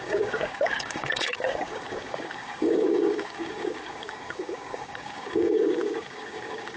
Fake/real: fake